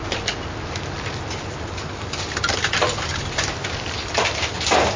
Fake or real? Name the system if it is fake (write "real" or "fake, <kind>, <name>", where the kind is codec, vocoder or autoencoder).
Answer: real